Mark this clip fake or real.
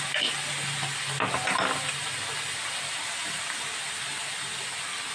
real